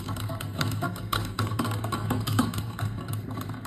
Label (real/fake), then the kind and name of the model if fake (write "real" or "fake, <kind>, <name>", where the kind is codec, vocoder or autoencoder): fake, codec, SNAC